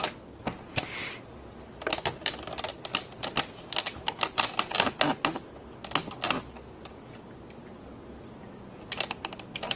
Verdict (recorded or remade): recorded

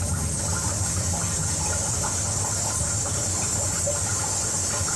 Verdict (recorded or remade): recorded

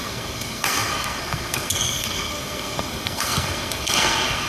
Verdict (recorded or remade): remade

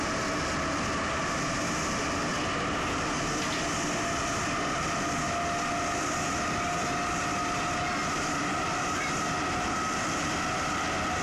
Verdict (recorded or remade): recorded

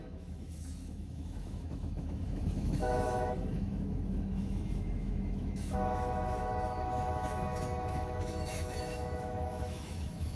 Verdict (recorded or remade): remade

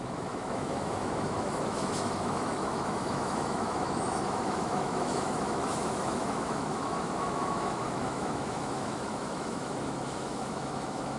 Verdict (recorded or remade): remade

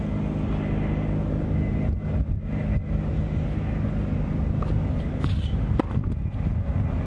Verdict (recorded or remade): recorded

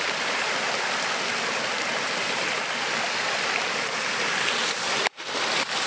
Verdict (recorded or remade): remade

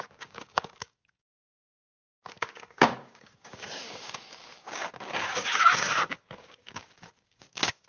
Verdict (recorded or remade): remade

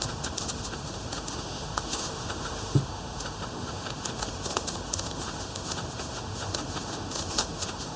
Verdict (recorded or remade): remade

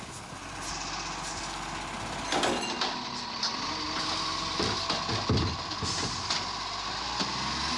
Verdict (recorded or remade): recorded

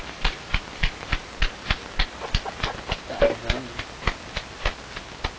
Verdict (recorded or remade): recorded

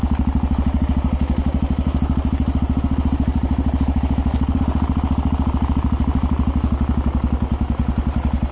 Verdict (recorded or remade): recorded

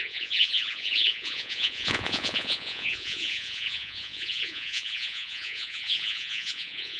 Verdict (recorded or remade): remade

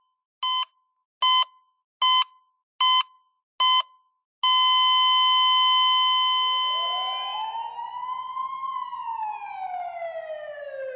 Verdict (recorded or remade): recorded